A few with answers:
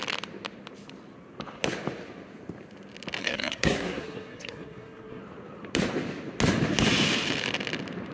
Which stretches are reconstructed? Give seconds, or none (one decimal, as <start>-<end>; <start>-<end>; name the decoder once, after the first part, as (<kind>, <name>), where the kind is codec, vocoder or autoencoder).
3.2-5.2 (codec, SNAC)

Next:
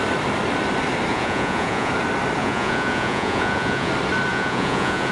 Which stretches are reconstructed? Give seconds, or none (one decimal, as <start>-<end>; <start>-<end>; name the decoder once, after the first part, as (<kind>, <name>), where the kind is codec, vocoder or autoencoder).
1.1-1.9 (vocoder, Vocos); 2.4-3.9; 4.3-5.1

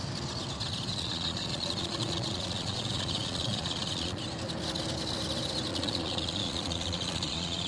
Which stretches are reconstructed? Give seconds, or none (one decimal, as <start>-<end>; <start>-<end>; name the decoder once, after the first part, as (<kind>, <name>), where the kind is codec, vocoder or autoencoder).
0.9-4.2 (vocoder, Vocos); 5.7-7.7

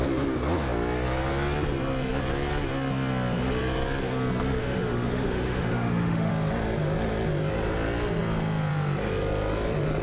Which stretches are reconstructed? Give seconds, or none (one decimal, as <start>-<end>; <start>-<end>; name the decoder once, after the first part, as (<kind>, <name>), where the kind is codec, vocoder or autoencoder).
4.6-6.3 (autoencoder, DAC-VAE)

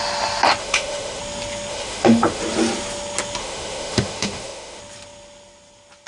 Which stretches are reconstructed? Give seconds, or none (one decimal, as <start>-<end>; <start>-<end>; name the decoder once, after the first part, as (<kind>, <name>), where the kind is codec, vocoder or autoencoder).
0.6-1.2 (autoencoder, DAC-VAE); 1.7-2.4; 3.4-4.8

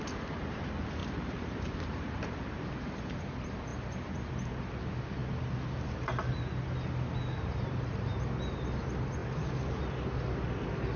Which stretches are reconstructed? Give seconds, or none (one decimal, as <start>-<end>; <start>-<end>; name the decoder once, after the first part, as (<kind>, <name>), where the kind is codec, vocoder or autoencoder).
1.0-3.2 (vocoder, BigVGAN v2); 3.7-4.7; 9.2-9.8